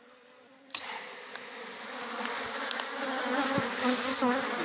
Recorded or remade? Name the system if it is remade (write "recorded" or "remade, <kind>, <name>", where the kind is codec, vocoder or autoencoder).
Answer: recorded